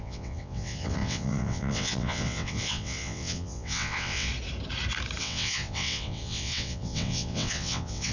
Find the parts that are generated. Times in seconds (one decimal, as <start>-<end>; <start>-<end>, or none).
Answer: 0.0-4.3; 5.2-8.1

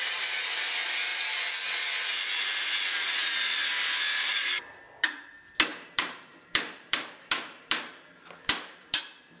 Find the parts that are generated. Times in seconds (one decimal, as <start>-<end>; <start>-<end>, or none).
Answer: 4.3-4.8; 5.7-9.0

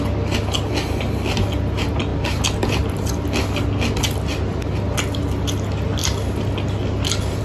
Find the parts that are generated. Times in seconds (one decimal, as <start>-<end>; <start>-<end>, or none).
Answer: none

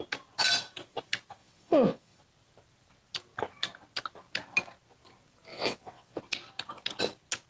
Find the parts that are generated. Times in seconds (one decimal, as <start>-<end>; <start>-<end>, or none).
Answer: 1.4-2.2; 5.5-6.2